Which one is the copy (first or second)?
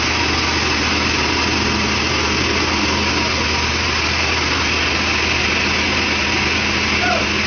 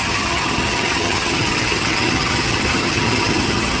second